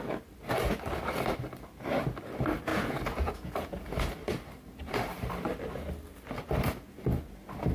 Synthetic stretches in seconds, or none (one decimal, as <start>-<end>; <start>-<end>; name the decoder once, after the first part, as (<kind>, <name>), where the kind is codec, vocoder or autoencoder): 2.7-4.0 (vocoder, Vocos)